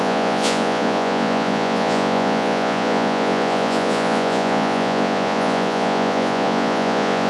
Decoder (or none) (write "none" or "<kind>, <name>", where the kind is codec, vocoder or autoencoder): vocoder, Vocos